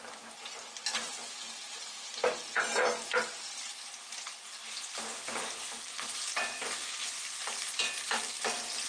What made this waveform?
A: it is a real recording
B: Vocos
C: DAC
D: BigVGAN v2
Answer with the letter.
A